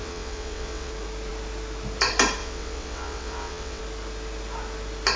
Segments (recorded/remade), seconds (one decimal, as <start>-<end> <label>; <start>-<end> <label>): 0.0-0.9 remade; 0.9-2.4 recorded; 2.4-3.8 remade; 3.8-5.2 recorded